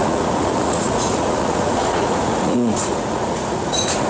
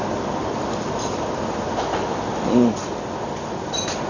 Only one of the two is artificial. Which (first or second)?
first